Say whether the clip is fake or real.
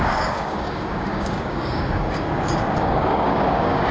fake